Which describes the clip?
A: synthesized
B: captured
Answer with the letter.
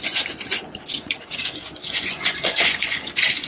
A